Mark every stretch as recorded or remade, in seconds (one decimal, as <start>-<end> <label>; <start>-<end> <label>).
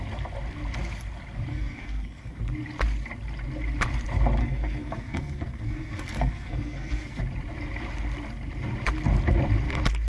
0.0-1.5 recorded; 1.5-2.4 remade; 2.4-4.4 recorded; 4.4-7.2 remade; 7.2-10.1 recorded